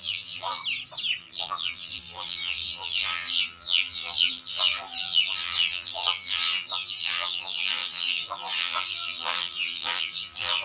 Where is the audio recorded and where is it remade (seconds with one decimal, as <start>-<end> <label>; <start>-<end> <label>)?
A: 0.0-0.6 remade; 0.6-1.2 recorded; 1.2-10.6 remade